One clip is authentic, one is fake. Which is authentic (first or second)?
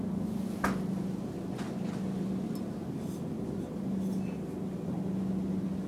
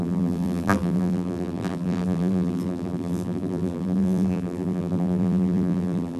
first